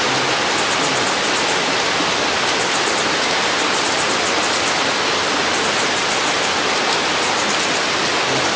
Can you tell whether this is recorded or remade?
recorded